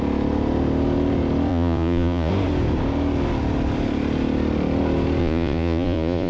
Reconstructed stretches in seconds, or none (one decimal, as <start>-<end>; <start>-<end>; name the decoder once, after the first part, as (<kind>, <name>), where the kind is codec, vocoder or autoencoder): 1.5-2.3 (vocoder, Vocos); 5.2-6.3

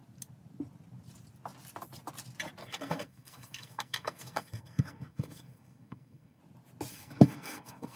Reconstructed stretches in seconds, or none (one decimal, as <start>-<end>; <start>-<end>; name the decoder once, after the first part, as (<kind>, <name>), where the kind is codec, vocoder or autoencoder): 2.6-6.4 (codec, SNAC); 6.9-8.0

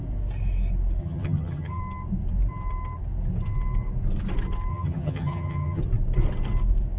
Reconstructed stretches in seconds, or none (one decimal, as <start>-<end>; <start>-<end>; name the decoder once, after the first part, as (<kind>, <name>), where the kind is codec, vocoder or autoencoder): 1.0-1.8 (vocoder, HiFi-GAN); 4.7-5.8

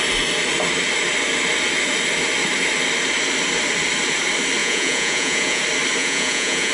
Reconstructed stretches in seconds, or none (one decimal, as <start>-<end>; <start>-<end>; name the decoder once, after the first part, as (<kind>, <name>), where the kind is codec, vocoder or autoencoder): 4.6-5.6 (vocoder, Vocos); 6.0-6.7

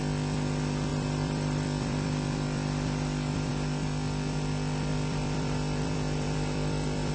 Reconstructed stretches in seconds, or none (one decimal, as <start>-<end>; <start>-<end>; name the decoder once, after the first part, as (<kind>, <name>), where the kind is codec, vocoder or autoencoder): 0.9-3.5 (vocoder, BigVGAN v2); 4.9-7.1

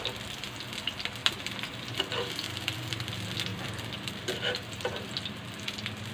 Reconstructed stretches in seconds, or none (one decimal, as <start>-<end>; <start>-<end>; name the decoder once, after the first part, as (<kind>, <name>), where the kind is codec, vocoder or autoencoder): 1.2-2.0 (vocoder, BigVGAN v2); 3.5-5.5